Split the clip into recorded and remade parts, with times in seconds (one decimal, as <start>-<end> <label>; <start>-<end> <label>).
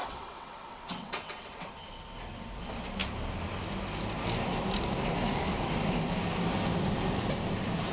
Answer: 0.0-1.7 remade; 1.7-7.9 recorded